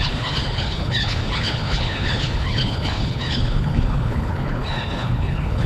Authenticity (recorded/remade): remade